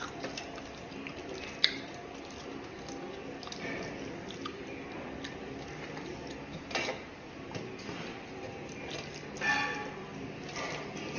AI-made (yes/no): no